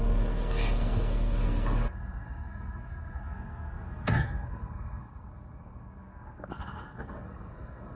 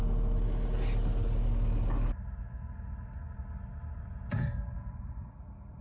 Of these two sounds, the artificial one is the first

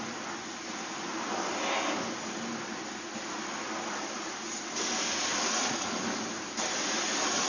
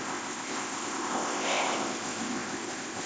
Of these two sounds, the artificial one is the second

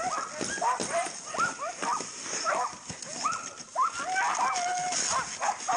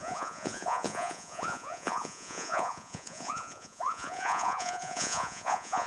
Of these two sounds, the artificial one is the second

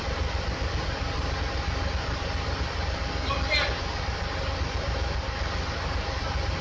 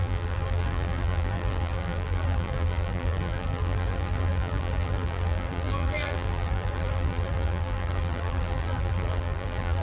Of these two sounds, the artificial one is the second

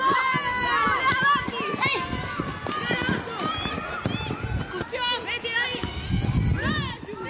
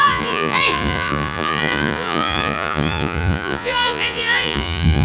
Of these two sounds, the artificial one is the second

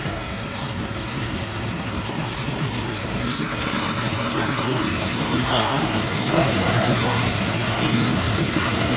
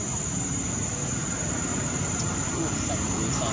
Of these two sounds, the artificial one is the first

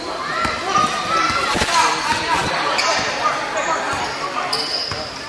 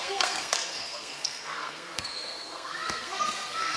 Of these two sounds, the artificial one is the second